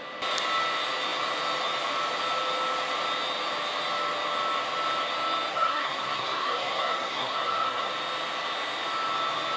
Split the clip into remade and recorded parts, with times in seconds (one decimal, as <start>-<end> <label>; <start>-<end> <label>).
0.0-5.5 recorded; 5.5-7.9 remade; 7.9-9.6 recorded